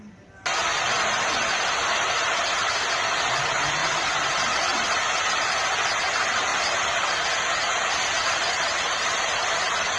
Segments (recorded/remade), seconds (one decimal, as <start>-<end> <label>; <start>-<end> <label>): 0.0-10.0 recorded